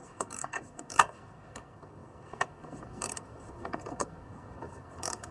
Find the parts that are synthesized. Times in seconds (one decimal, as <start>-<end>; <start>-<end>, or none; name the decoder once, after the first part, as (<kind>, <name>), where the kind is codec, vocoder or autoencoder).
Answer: 0.0-5.3 (codec, SNAC)

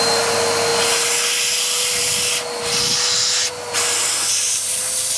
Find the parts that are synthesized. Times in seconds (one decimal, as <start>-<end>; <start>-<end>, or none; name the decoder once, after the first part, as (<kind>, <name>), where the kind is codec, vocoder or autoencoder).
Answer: none

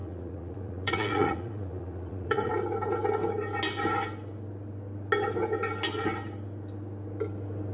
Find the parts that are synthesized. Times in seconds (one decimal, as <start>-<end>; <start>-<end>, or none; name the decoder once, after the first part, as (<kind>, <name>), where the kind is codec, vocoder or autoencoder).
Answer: 0.0-2.5 (vocoder, Vocos)

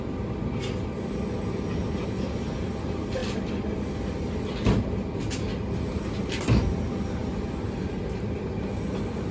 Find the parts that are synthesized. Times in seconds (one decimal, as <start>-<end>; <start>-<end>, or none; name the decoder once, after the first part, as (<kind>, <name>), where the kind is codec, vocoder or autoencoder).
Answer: none

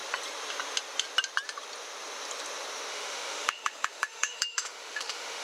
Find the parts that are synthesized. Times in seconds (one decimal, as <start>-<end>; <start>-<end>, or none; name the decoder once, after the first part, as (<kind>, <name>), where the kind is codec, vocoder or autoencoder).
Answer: 2.9-5.4 (autoencoder, DAC-VAE)